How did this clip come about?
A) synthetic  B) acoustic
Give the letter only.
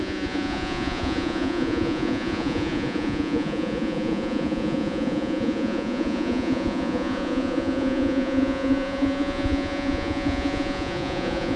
A